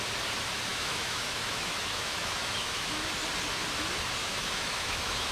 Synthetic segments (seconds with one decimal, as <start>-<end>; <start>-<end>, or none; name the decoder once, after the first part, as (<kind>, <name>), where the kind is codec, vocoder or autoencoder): 0.7-3.1 (autoencoder, DAC-VAE); 4.2-5.3